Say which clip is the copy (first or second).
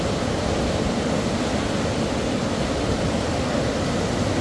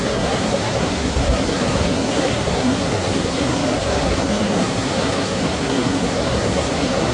second